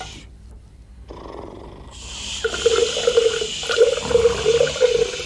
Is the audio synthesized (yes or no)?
no